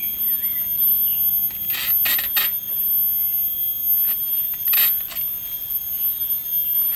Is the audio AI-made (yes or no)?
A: no